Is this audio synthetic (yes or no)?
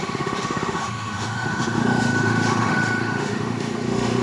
yes